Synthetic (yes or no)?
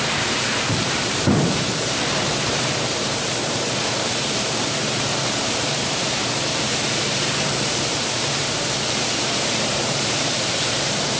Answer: yes